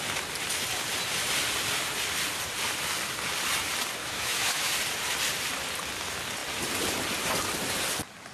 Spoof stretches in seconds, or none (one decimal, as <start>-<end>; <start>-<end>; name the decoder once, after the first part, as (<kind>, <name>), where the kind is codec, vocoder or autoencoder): 4.0-4.7 (autoencoder, DAC-VAE)